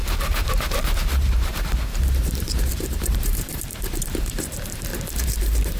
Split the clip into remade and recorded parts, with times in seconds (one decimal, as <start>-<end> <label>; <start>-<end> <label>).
0.0-5.8 remade